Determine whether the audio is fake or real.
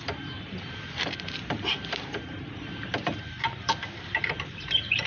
fake